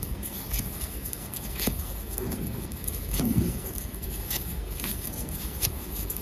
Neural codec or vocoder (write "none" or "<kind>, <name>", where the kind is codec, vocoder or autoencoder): codec, SNAC